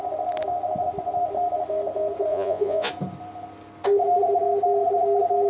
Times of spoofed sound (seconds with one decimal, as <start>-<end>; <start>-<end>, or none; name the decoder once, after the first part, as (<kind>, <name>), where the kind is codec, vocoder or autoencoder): 2.3-2.9 (vocoder, Vocos)